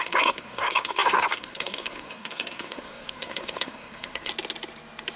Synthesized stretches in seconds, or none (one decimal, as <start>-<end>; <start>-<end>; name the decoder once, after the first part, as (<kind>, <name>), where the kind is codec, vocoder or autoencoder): 0.0-4.3 (codec, SNAC)